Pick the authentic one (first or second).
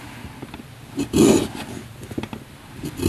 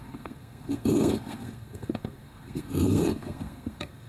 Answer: first